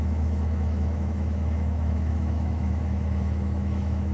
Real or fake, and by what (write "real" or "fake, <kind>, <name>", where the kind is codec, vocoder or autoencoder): fake, autoencoder, DAC-VAE